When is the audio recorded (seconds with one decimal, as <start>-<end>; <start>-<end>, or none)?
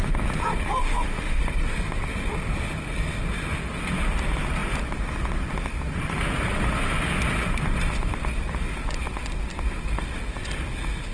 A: 0.0-0.8; 1.4-11.1